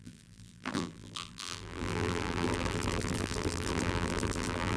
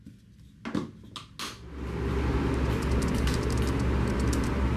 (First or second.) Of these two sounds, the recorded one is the second